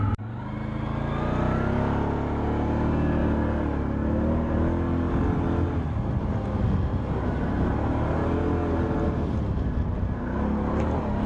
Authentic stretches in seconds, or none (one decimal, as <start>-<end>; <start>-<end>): 0.0-11.3